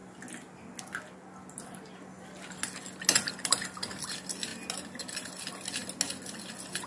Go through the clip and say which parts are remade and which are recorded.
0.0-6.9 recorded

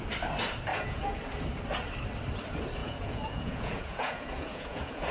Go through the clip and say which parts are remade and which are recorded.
0.0-0.7 recorded; 0.7-1.2 remade; 1.2-2.8 recorded; 2.8-5.1 remade